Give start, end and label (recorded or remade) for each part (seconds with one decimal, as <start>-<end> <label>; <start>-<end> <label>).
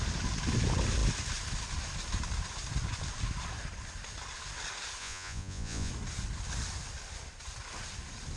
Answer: 0.0-5.0 recorded; 5.0-5.9 remade; 5.9-8.4 recorded